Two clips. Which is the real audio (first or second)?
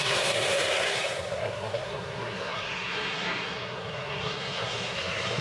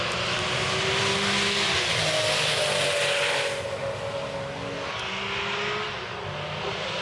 second